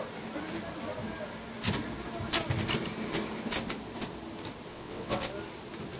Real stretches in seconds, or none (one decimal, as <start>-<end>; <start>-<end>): 0.0-4.7; 5.3-6.0